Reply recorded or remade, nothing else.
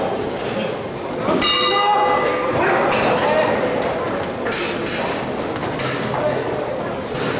recorded